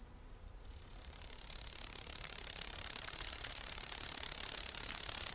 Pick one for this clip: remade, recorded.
remade